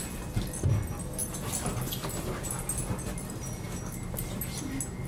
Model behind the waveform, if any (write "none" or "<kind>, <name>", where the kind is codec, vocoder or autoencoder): none